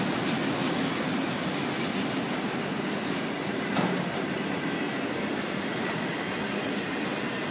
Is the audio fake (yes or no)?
no